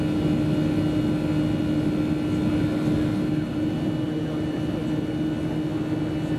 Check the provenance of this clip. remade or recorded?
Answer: recorded